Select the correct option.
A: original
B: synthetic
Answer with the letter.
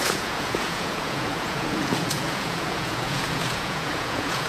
B